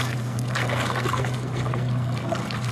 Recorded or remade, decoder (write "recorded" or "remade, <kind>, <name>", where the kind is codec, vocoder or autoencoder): remade, codec, SNAC